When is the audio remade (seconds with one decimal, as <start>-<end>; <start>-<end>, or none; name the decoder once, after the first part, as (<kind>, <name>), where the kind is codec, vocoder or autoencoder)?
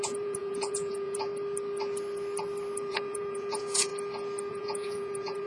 0.0-1.3 (vocoder, Vocos); 2.9-3.9; 4.5-5.5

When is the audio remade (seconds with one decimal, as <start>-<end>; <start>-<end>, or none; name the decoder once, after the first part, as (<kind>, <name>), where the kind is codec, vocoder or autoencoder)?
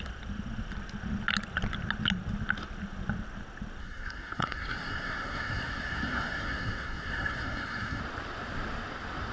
3.8-8.0 (codec, SNAC)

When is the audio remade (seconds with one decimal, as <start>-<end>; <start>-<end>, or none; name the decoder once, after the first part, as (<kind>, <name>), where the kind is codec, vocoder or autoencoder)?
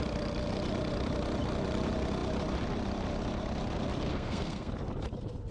4.1-4.7 (codec, SNAC)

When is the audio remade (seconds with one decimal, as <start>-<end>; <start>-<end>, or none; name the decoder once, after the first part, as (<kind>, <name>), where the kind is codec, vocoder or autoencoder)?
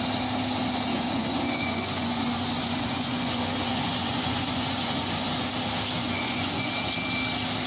0.9-5.5 (vocoder, Vocos); 6.0-6.7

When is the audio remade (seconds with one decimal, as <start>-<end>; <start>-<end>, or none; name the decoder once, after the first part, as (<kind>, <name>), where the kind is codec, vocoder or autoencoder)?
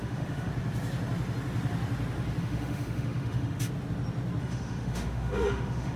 0.0-0.5 (autoencoder, DAC-VAE); 2.4-3.7; 4.4-6.0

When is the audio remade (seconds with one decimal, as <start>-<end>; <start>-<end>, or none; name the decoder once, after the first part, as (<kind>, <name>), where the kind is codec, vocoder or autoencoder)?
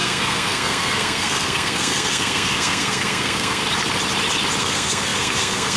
0.0-3.6 (codec, SNAC); 4.6-5.8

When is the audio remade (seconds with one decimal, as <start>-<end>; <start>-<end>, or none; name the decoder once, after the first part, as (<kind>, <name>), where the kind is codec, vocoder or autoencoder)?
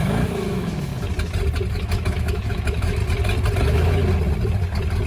0.0-0.9 (autoencoder, DAC-VAE); 1.7-3.0; 3.6-4.0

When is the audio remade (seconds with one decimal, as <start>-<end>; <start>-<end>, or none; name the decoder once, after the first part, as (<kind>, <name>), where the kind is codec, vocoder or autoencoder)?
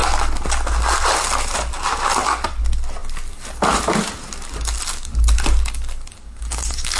6.2-7.0 (codec, DAC)